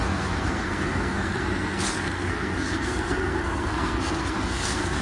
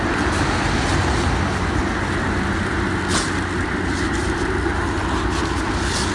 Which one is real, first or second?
second